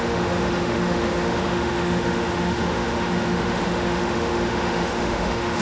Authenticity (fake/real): fake